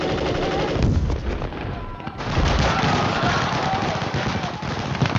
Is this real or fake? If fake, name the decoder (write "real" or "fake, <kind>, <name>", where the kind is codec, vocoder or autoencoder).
real